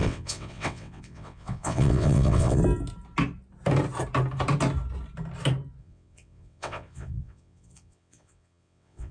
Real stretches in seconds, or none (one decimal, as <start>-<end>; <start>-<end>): 2.6-5.8